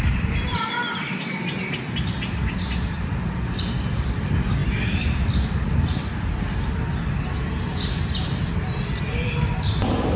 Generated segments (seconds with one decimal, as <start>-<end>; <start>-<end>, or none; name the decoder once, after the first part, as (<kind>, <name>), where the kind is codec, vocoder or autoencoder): none